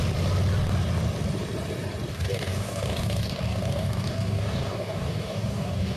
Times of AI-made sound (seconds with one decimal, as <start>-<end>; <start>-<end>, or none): 2.1-6.0